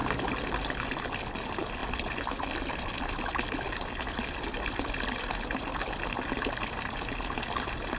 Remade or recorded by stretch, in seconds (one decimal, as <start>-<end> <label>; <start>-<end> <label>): 0.0-8.0 recorded